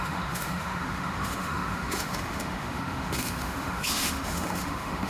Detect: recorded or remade remade